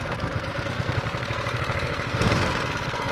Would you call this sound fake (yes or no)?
yes